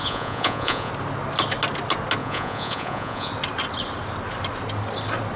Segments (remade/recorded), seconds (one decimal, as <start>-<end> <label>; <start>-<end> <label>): 0.0-0.9 remade; 0.9-2.2 recorded; 2.2-3.3 remade; 3.3-5.4 recorded